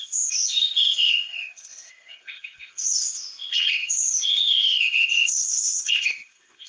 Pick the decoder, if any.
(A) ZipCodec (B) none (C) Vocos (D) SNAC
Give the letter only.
A